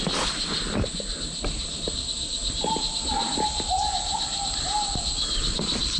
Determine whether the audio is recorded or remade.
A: recorded